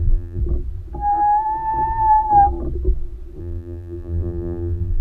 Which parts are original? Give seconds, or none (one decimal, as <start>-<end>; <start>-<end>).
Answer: 0.4-3.4